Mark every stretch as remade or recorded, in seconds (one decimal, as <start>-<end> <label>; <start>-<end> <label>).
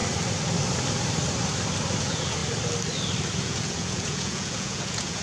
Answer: 0.0-2.0 recorded; 2.0-2.4 remade; 2.4-3.4 recorded; 3.4-5.2 remade